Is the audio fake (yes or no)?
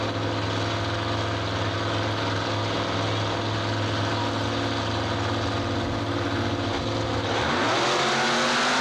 no